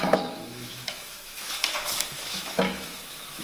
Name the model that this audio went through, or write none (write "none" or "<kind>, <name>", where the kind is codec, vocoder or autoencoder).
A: autoencoder, DAC-VAE